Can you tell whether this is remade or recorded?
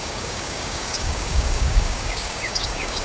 remade